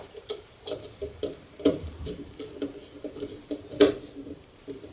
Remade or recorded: remade